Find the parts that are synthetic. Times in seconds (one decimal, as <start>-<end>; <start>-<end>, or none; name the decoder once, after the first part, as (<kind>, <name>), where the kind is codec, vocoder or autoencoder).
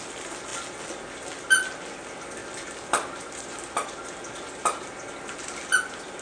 none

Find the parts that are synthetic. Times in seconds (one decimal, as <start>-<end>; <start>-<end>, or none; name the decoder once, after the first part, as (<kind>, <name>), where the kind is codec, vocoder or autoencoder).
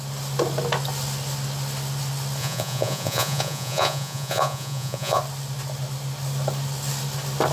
2.4-5.2 (vocoder, Vocos)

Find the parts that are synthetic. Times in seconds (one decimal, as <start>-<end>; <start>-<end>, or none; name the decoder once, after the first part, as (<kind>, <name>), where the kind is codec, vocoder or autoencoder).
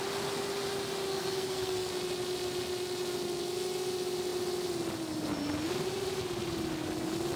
1.1-1.9 (codec, SNAC)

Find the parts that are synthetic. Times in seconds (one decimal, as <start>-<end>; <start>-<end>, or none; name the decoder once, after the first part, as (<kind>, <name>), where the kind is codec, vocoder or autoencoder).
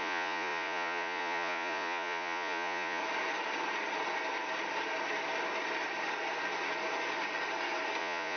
0.0-3.0 (vocoder, Vocos); 8.0-8.4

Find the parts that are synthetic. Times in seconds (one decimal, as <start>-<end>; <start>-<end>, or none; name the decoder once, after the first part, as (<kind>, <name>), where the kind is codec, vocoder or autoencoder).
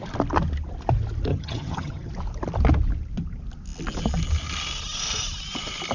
1.3-2.1 (vocoder, HiFi-GAN)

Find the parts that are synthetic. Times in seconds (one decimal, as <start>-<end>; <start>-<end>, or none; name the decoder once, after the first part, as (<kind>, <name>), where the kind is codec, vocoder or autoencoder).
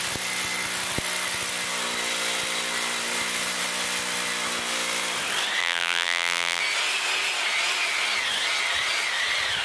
5.6-6.6 (vocoder, BigVGAN v2)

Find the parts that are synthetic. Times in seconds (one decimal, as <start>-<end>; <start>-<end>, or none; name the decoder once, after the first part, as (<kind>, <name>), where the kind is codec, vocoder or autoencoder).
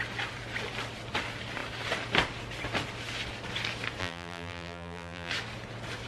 4.0-5.3 (vocoder, BigVGAN v2)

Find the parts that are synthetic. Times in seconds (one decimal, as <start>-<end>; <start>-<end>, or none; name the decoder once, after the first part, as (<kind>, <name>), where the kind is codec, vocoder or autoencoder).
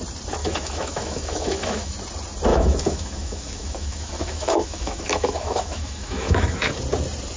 0.4-1.9 (autoencoder, DAC-VAE); 2.5-6.7